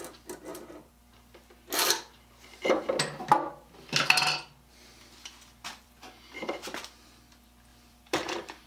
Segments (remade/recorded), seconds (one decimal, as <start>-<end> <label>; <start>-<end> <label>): 0.0-0.5 recorded; 0.5-1.0 remade; 1.0-5.7 recorded; 5.7-6.5 remade; 6.5-7.7 recorded; 7.7-8.7 remade